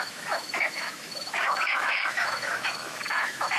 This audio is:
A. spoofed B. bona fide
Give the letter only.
A